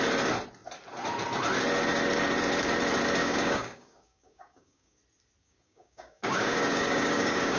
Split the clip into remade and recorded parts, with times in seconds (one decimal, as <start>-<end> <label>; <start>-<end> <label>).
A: 0.0-3.2 recorded; 3.2-5.0 remade; 5.0-5.4 recorded; 5.4-7.6 remade